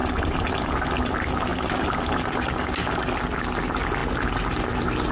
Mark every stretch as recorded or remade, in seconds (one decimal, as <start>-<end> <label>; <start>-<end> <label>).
0.0-5.1 recorded